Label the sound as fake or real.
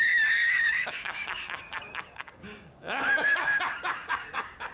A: fake